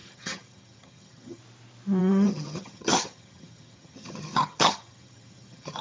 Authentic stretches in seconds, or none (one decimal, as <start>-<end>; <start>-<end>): 1.4-2.0